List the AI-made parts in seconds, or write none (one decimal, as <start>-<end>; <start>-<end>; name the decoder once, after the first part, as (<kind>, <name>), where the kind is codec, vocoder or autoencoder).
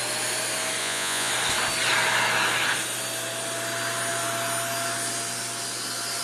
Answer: 0.8-1.3 (vocoder, Vocos)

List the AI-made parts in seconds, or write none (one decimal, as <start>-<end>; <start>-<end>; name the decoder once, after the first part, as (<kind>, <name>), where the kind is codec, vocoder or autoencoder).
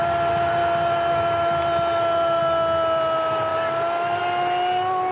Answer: none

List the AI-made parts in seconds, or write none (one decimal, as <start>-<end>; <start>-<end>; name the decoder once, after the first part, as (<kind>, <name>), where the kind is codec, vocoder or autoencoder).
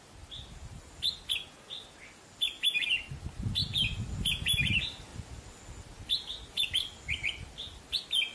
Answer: none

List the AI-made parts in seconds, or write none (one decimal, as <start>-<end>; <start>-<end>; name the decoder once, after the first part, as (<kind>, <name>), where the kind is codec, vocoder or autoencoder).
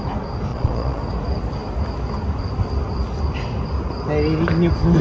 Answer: 0.5-1.0 (vocoder, Vocos)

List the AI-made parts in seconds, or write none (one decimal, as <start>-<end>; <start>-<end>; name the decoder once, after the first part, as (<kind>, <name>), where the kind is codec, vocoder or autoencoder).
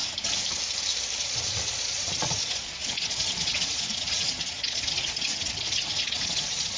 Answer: 1.2-6.8 (vocoder, Vocos)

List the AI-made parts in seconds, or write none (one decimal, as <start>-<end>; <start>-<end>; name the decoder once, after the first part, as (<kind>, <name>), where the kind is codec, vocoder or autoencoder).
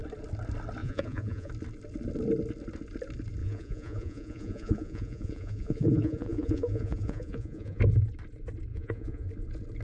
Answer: 0.8-1.5 (vocoder, Vocos); 3.4-7.8; 8.7-9.3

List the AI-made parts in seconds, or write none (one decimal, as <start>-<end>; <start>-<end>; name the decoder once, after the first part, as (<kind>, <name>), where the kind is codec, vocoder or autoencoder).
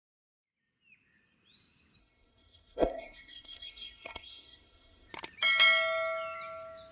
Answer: 2.0-5.1 (codec, SNAC)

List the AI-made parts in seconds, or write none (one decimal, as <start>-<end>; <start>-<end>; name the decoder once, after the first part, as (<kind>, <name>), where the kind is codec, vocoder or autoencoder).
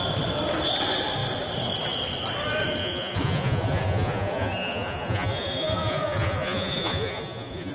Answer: 2.8-7.7 (vocoder, Vocos)